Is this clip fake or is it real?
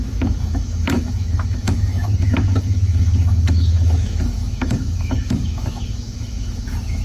fake